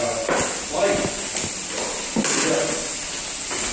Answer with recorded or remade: recorded